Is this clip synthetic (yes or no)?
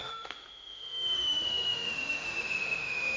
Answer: yes